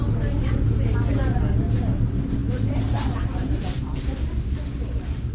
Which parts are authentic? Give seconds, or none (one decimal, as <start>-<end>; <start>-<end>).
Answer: 0.0-1.5

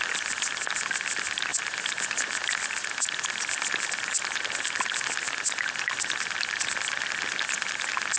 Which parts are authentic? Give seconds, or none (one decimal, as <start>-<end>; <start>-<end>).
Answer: 0.0-8.2

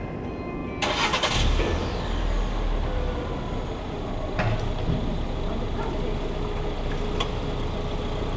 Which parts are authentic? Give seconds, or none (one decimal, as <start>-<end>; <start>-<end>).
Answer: 0.0-8.4

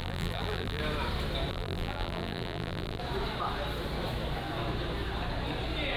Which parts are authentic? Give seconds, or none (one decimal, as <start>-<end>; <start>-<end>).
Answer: 0.8-1.5; 3.0-6.0

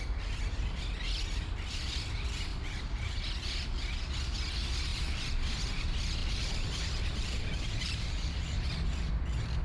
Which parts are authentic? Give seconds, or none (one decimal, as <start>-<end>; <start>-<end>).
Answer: 0.0-2.5; 3.1-6.2; 9.1-9.6

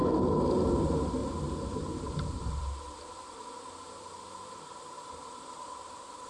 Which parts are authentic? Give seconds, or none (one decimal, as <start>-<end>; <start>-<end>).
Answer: 0.0-0.7

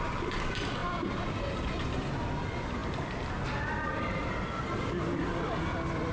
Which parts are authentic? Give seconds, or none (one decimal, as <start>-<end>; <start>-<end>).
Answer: 0.0-0.8; 2.1-6.1